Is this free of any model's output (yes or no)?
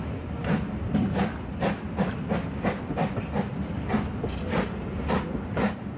yes